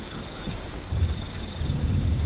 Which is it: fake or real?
fake